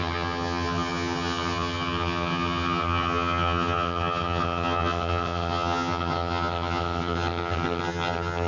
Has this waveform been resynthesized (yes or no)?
yes